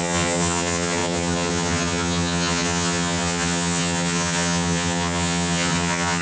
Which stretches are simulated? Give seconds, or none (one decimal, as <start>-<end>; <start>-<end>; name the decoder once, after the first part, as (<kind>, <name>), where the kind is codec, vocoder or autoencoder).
0.0-6.2 (vocoder, HiFi-GAN)